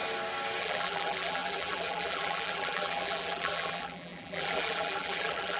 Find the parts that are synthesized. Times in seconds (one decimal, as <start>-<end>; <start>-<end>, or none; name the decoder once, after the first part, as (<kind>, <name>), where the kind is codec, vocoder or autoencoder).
0.6-5.6 (vocoder, BigVGAN v2)